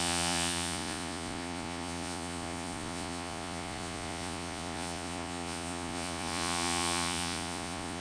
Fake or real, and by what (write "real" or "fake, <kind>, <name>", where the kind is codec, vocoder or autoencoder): fake, vocoder, Vocos